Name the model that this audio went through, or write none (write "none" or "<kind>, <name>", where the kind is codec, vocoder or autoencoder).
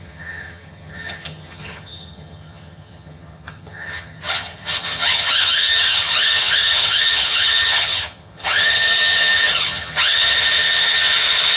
vocoder, HiFi-GAN